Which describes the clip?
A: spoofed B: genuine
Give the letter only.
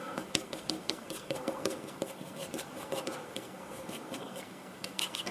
A